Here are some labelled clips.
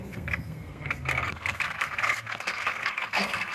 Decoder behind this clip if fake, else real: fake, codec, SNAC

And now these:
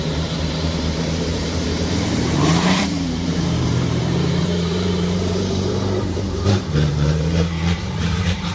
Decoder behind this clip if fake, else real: fake, vocoder, BigVGAN v2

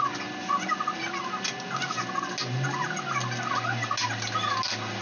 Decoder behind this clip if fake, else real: real